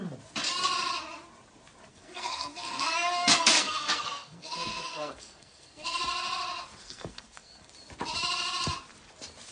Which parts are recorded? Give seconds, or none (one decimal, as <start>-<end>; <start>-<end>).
0.0-1.9; 6.0-6.8; 7.7-9.5